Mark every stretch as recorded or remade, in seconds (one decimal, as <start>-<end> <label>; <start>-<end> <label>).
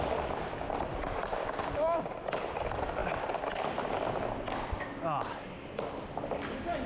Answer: 0.0-6.9 recorded